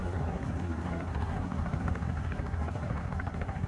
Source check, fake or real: fake